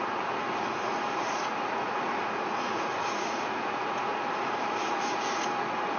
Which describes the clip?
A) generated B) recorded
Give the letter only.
A